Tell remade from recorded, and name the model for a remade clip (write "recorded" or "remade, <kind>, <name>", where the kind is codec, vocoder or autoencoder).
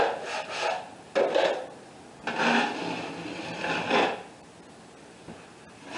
recorded